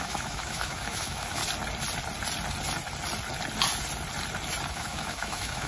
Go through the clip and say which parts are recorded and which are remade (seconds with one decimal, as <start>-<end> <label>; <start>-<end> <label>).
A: 0.0-1.4 remade; 1.4-4.7 recorded; 4.7-5.7 remade